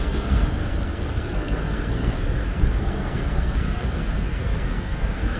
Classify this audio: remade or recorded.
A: remade